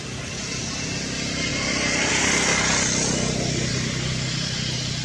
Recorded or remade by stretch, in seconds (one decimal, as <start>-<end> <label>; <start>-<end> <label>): 0.0-5.0 recorded